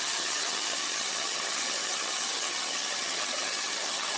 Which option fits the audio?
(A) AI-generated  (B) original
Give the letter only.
A